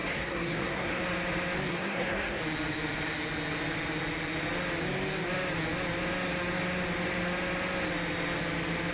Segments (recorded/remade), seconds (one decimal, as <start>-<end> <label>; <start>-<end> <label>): 0.0-1.0 remade; 1.0-1.7 recorded; 1.7-2.4 remade; 2.4-8.9 recorded